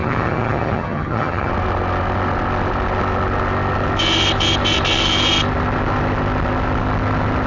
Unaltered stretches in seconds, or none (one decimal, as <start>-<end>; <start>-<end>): 1.5-7.5